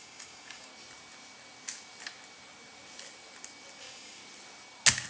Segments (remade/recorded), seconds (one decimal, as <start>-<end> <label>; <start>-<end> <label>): 0.0-0.7 remade; 0.7-3.8 recorded; 3.8-4.2 remade; 4.2-5.1 recorded